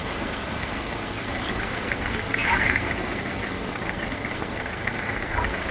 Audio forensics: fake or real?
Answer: fake